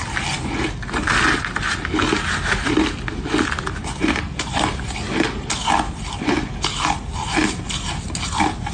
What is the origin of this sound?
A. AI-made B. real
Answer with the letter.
B